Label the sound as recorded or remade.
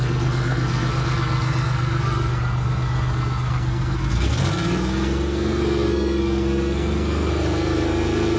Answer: remade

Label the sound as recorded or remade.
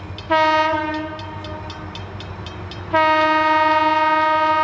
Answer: recorded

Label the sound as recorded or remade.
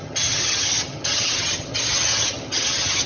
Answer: remade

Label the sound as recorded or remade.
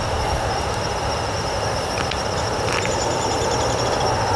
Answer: recorded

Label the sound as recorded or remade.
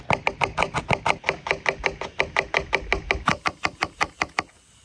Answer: recorded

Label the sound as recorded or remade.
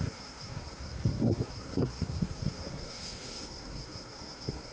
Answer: remade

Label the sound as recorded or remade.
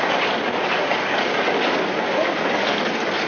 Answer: recorded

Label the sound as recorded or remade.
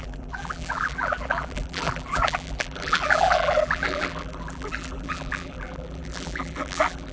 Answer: remade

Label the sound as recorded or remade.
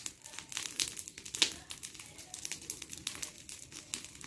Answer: recorded